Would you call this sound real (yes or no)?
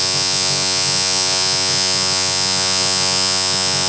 no